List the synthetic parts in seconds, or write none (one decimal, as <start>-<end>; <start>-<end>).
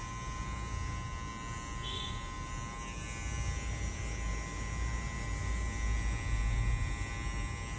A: none